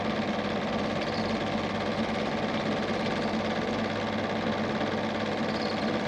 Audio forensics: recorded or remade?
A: recorded